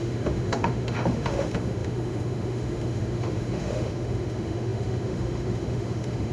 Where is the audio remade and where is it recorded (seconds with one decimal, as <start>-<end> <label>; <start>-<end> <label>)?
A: 0.0-6.3 remade

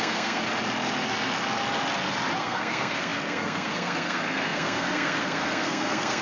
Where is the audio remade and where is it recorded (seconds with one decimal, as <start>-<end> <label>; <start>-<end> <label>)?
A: 0.0-0.4 remade; 0.4-2.4 recorded; 2.4-6.2 remade

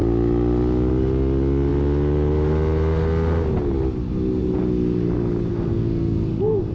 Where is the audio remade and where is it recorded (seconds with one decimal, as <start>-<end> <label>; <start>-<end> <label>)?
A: 0.0-5.5 recorded; 5.5-6.7 remade

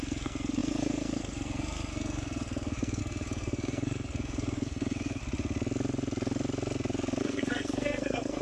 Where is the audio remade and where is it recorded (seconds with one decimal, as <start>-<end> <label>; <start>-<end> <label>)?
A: 0.0-5.2 remade; 5.2-7.2 recorded; 7.2-8.4 remade

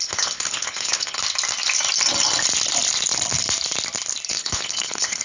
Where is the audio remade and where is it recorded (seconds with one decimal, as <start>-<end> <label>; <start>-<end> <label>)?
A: 0.0-1.2 remade; 1.2-4.3 recorded; 4.3-5.2 remade

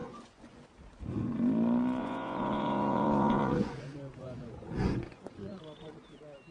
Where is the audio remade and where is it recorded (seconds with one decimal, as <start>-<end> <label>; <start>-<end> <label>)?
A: 0.0-0.7 remade; 0.7-2.0 recorded; 2.0-5.6 remade; 5.6-6.5 recorded

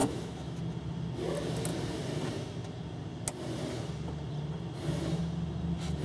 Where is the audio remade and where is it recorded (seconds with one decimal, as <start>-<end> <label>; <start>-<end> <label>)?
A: 0.0-0.6 remade; 0.6-6.0 recorded